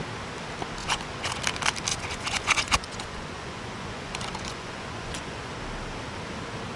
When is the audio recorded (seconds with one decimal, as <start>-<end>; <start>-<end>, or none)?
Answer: 0.0-0.8; 1.4-1.9; 5.5-6.8